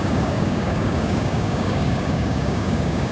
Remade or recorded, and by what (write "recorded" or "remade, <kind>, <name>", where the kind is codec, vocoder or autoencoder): remade, codec, DAC